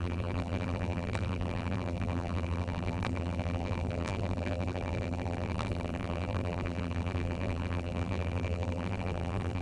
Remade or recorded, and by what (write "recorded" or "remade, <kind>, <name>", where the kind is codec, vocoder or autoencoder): remade, vocoder, BigVGAN v2